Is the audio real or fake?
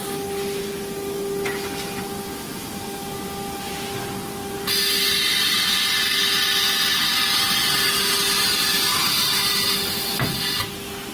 real